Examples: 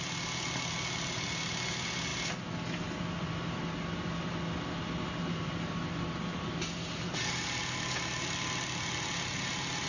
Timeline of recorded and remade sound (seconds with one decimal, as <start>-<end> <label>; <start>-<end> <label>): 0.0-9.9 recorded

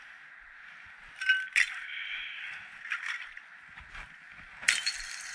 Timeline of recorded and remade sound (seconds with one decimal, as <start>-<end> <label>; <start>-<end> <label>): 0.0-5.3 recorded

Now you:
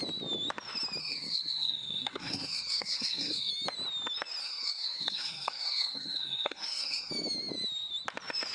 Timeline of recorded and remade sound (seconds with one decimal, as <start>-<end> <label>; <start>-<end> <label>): 0.0-1.0 recorded; 1.0-3.5 remade; 3.5-4.4 recorded; 4.4-7.1 remade; 7.1-8.5 recorded

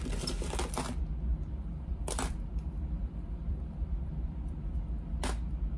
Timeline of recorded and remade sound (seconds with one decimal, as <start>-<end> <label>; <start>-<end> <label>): 0.0-1.3 recorded; 1.3-4.8 remade; 4.8-5.8 recorded

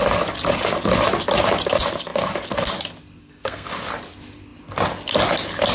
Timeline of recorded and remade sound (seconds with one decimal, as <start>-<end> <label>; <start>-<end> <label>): 0.0-3.2 recorded; 3.2-3.7 remade; 3.7-5.7 recorded

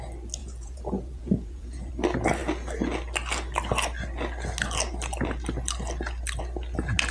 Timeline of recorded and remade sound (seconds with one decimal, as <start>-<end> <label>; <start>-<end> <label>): 0.0-0.4 recorded; 0.4-1.9 remade; 1.9-7.1 recorded

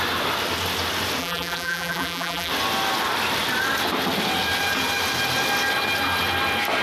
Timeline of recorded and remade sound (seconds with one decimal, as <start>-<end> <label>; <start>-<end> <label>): 0.0-1.2 recorded; 1.2-2.5 remade; 2.5-6.8 recorded